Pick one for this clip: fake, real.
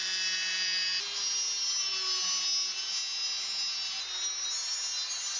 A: real